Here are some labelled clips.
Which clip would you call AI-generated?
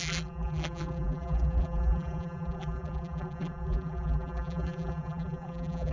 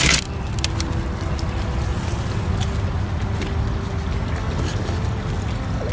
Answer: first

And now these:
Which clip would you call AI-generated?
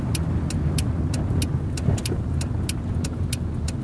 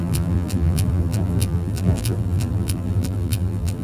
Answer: second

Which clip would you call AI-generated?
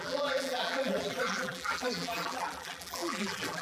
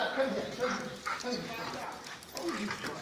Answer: first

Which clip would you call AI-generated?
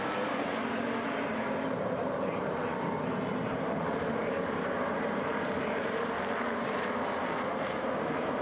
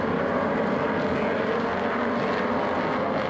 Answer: first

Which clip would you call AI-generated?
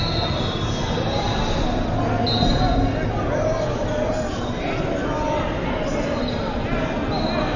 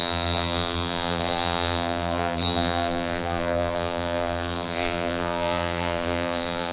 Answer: second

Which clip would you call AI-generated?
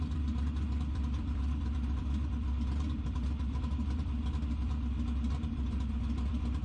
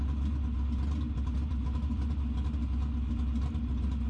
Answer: first